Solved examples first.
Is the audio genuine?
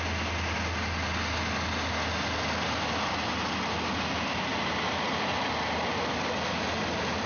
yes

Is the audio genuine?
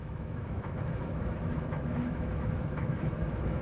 no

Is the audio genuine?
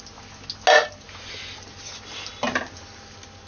yes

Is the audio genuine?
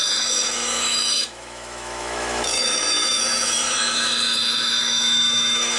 no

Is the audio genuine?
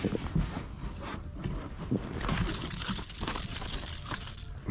yes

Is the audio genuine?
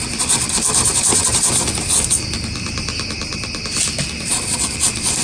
yes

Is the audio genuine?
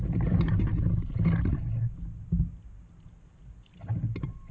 yes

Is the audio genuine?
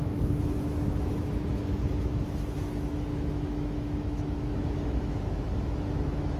no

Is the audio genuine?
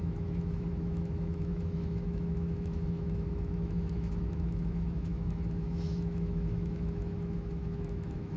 no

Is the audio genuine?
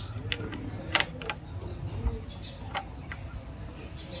yes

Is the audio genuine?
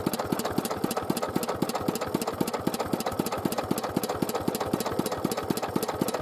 yes